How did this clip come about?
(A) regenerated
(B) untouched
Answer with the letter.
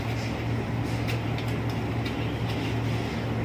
B